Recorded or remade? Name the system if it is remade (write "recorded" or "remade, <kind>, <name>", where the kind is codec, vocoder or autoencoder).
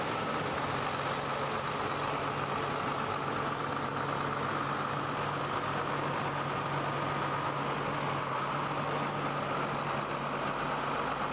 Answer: recorded